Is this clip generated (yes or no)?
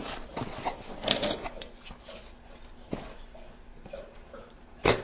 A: no